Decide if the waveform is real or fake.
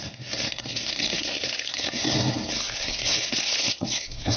fake